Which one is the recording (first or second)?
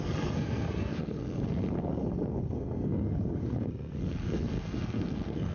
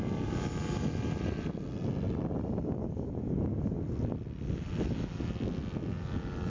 second